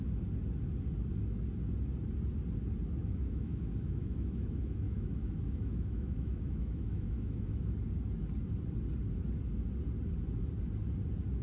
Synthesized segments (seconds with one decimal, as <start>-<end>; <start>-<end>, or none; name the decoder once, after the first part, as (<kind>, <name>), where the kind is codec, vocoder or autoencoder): 3.0-7.8 (autoencoder, DAC-VAE)